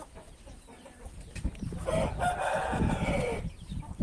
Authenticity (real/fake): real